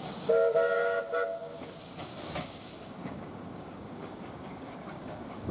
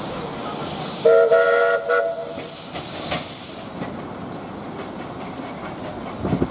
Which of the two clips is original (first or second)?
second